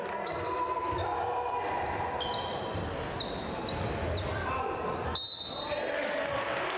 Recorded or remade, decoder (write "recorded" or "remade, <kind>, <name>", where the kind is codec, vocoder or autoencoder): recorded